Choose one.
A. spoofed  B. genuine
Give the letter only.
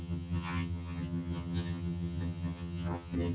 A